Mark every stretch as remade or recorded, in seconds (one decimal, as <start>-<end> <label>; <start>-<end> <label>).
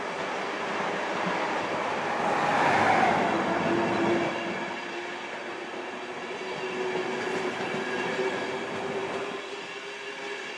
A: 0.0-2.5 recorded; 2.5-4.3 remade; 4.3-10.6 recorded